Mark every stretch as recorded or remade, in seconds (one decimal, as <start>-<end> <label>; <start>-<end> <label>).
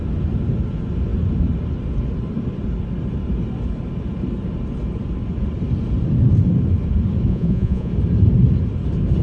0.0-7.3 recorded; 7.3-7.9 remade; 7.9-9.2 recorded